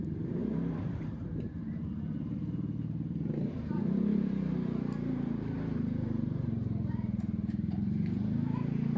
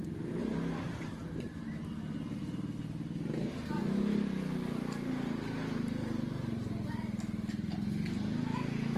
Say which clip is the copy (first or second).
first